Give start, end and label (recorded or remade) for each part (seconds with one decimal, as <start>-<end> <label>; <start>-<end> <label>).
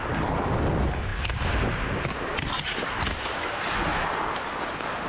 0.0-5.1 recorded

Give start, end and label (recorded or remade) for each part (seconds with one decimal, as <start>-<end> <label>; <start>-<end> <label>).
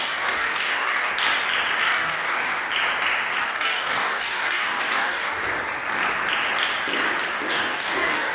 0.0-1.1 remade; 1.1-1.8 recorded; 1.8-2.5 remade; 2.5-3.4 recorded; 3.4-5.4 remade; 5.4-7.5 recorded; 7.5-8.3 remade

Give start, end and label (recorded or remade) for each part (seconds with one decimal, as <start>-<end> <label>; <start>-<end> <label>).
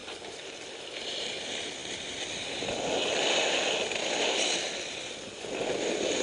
0.0-6.2 recorded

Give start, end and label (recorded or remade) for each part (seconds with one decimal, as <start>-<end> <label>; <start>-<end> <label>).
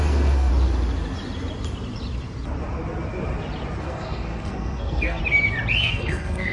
0.0-0.5 remade; 0.5-3.8 recorded; 3.8-5.2 remade; 5.2-5.8 recorded; 5.8-6.5 remade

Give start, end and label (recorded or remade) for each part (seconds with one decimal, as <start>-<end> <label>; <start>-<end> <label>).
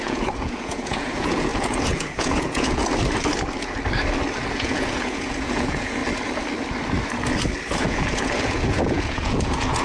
0.0-2.8 remade; 2.8-4.5 recorded; 4.5-6.0 remade; 6.0-7.7 recorded; 7.7-9.8 remade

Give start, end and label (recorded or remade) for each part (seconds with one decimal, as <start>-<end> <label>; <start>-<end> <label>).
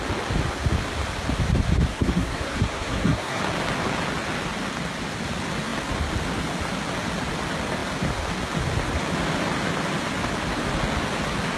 0.0-1.9 recorded; 1.9-3.4 remade; 3.4-11.6 recorded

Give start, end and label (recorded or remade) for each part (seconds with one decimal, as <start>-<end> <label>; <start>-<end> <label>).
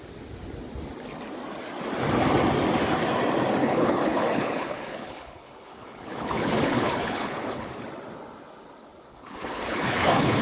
0.0-3.6 recorded; 3.6-7.7 remade; 7.7-9.1 recorded; 9.1-10.4 remade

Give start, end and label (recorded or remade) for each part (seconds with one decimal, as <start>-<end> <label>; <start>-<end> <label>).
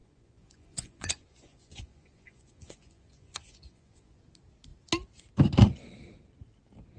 0.0-4.2 remade; 4.2-7.0 recorded